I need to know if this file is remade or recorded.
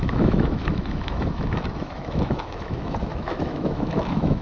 remade